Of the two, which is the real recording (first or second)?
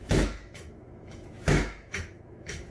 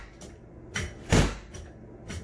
second